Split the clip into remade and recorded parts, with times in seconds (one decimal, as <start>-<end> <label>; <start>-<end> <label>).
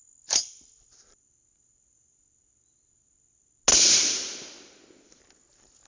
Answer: 0.0-2.4 remade; 2.4-3.7 recorded; 3.7-5.1 remade; 5.1-5.9 recorded